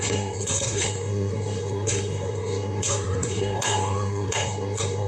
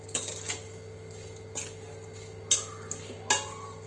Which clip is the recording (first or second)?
second